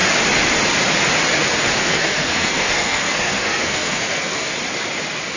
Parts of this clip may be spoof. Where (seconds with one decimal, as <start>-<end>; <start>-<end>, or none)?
1.8-4.5